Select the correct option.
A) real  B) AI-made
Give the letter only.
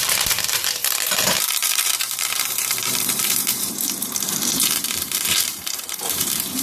B